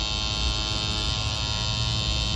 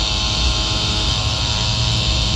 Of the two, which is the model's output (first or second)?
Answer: second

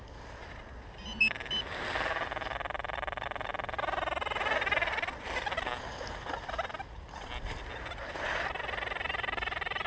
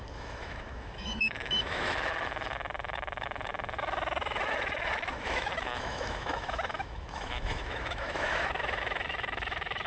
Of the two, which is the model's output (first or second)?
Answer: second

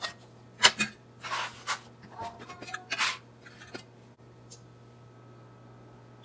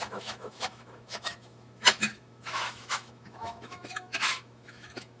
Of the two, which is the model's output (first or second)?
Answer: second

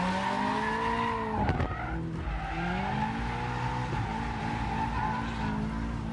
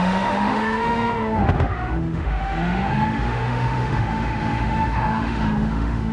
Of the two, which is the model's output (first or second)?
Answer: second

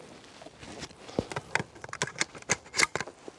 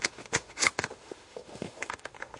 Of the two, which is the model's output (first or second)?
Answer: second